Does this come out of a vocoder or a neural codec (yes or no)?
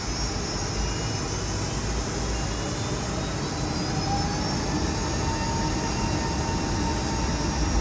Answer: no